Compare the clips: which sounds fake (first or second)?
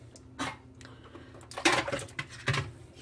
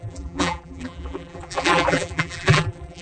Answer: second